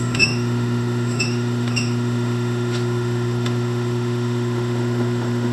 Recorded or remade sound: remade